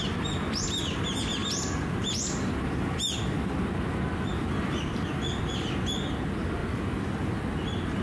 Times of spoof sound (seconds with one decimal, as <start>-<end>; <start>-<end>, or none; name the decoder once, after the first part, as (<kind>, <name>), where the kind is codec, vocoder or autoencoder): 1.4-3.6 (vocoder, BigVGAN v2); 4.3-5.4; 6.6-7.4